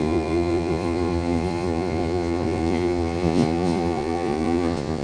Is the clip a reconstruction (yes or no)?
yes